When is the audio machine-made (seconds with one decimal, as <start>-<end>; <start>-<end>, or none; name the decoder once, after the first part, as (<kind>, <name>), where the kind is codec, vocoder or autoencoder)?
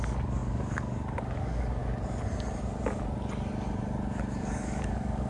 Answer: 0.0-1.8 (codec, DAC); 4.4-5.3